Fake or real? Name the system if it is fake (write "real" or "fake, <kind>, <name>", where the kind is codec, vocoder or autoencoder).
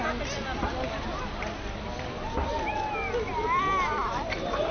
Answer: real